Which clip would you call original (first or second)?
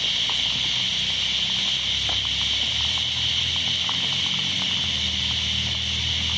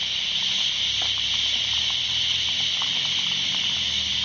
first